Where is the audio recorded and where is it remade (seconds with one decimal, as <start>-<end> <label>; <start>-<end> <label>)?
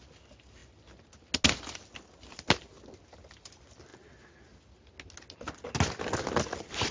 0.0-6.9 recorded